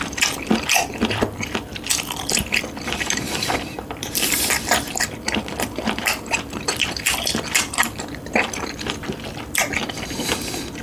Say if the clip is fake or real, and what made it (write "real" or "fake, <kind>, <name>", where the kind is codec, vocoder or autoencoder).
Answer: fake, vocoder, BigVGAN v2